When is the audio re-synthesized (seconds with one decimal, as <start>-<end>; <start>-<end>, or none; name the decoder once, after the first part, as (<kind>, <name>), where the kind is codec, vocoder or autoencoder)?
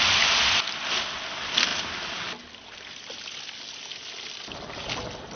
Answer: none